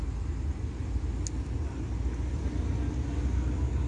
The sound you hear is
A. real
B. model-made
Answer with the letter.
A